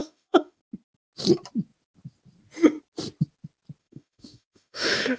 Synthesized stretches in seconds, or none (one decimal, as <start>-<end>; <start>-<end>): 0.0-0.6; 3.8-5.2